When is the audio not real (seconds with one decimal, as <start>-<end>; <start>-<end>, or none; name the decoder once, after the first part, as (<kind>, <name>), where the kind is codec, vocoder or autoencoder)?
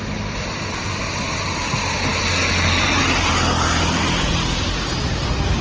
none